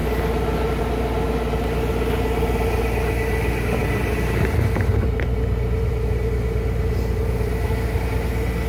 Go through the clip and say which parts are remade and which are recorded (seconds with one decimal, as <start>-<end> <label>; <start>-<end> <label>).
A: 0.0-8.7 recorded